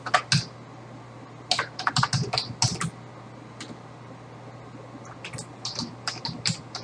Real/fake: real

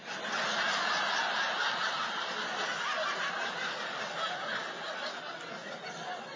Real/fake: real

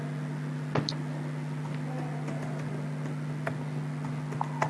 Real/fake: real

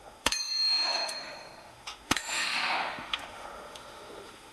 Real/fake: fake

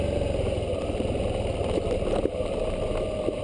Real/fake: real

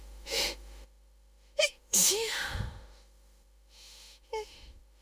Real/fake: fake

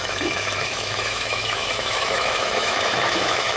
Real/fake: fake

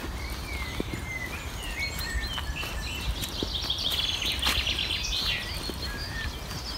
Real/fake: real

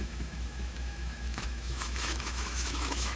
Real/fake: fake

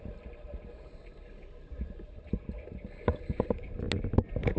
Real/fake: real